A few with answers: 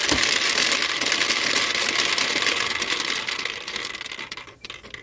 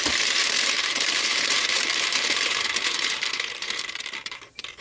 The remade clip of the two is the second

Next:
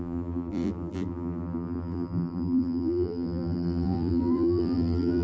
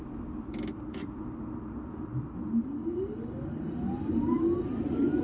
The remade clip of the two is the first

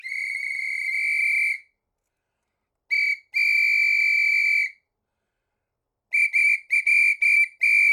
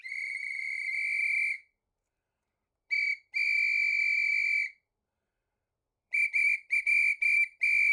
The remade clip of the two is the second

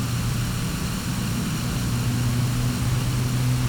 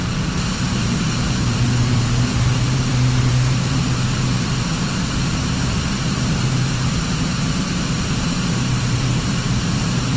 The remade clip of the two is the second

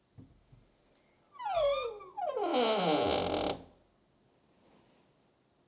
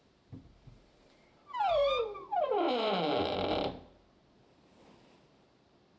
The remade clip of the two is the second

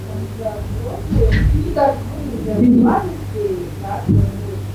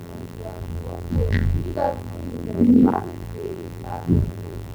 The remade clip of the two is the second